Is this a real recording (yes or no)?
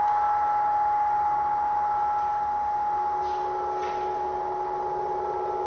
yes